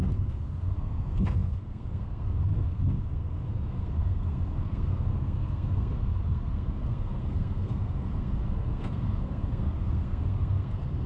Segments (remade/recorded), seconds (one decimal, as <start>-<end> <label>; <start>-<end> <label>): 0.0-11.1 remade